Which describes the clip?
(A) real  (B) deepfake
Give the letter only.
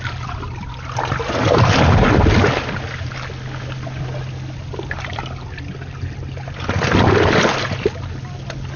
A